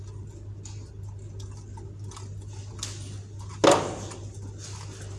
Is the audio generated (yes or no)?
no